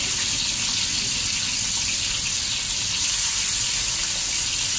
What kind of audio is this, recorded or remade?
recorded